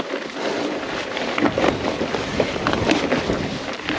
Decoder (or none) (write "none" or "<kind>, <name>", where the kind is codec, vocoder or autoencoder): none